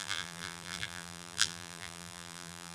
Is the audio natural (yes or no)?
no